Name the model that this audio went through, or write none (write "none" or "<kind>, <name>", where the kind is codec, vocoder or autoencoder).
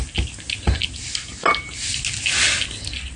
none